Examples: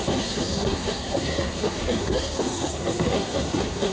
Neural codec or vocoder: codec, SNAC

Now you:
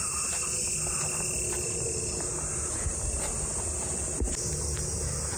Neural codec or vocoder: none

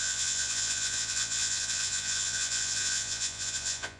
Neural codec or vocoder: vocoder, Vocos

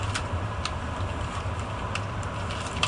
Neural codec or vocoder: none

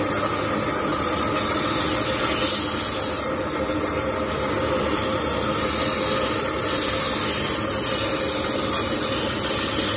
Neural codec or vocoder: none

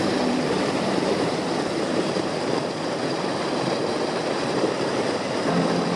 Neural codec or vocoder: vocoder, BigVGAN v2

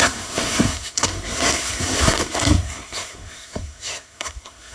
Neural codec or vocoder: codec, SNAC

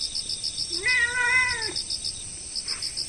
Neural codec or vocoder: none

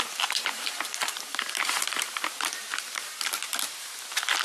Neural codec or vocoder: vocoder, BigVGAN v2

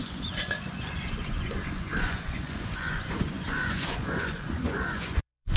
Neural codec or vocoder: vocoder, Vocos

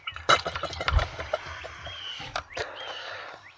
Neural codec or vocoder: vocoder, BigVGAN v2